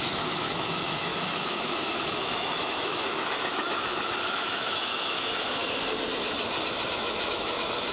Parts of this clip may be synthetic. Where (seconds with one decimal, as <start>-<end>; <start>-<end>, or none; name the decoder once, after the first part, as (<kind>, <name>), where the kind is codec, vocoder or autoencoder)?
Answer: 0.0-5.6 (autoencoder, DAC-VAE); 6.9-7.9